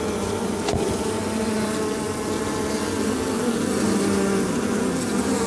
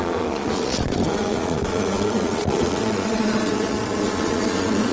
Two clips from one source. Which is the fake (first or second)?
second